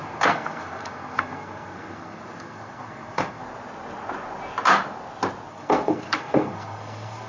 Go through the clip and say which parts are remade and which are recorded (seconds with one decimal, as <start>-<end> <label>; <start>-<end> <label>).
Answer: 0.0-3.4 remade; 3.4-5.5 recorded; 5.5-7.3 remade